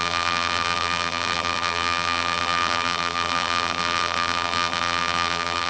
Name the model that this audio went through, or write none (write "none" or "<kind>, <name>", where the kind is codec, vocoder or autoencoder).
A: vocoder, BigVGAN v2